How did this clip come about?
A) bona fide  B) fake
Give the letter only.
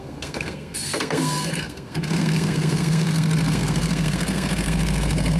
B